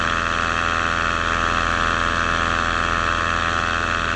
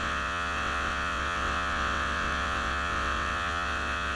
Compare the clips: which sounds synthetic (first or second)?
second